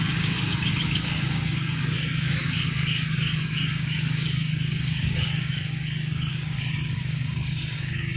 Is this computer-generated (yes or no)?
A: yes